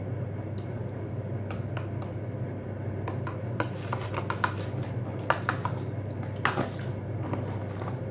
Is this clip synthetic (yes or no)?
no